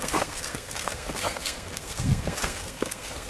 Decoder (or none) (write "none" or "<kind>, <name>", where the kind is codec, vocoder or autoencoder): codec, SNAC